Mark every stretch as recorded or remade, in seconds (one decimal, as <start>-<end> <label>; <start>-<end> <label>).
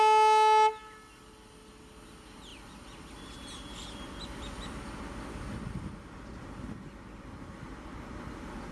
0.0-8.7 recorded